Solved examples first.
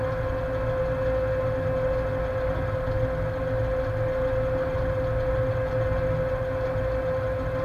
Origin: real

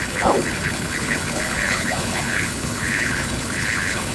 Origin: fake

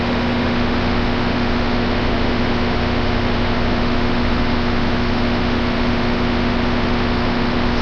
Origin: fake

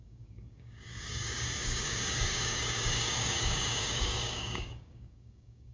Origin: fake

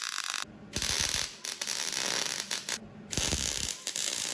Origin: real